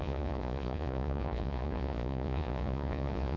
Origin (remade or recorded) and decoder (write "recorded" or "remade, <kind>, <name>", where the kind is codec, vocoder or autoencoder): remade, vocoder, Vocos